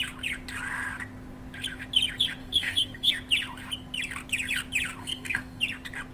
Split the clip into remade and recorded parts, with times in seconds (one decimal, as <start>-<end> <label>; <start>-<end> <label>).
0.0-2.4 recorded; 2.4-3.1 remade; 3.1-5.0 recorded; 5.0-5.6 remade; 5.6-6.1 recorded